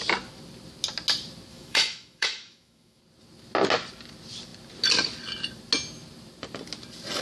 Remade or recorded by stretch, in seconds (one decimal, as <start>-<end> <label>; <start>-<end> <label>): 0.0-1.5 recorded; 1.5-3.0 remade; 3.0-7.2 recorded